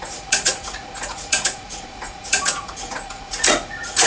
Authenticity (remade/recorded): remade